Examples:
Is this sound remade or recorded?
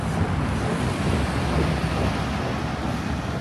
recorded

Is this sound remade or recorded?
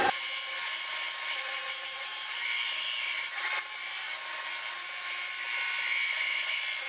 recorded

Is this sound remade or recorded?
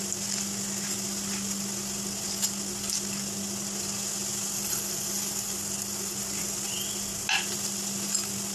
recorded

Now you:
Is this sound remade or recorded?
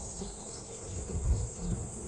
remade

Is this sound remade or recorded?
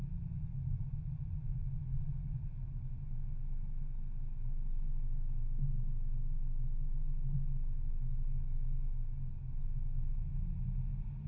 recorded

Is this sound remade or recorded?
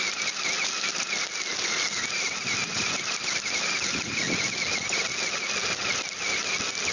recorded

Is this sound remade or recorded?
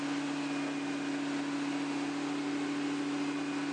recorded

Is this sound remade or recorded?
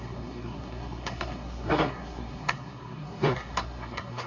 remade